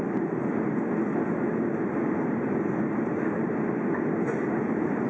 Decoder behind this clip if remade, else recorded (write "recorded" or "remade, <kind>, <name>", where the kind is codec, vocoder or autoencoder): recorded